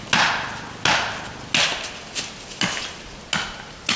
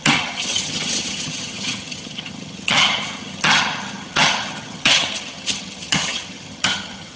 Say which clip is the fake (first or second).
second